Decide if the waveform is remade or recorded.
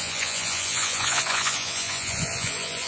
remade